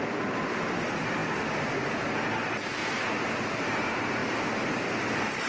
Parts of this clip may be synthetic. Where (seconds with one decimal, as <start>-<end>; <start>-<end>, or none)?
none